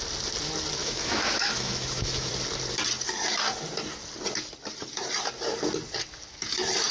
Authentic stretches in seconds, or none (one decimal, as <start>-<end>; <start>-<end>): 0.0-0.8; 2.3-6.9